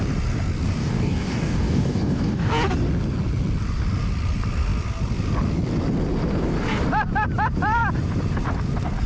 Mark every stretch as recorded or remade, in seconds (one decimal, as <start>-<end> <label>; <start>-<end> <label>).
0.0-0.8 recorded; 0.8-2.5 remade; 2.5-9.1 recorded